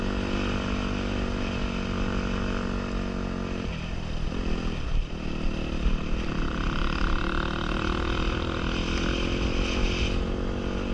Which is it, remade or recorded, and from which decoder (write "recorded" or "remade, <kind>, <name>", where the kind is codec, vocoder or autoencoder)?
recorded